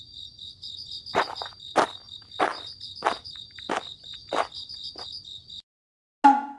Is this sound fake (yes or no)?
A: no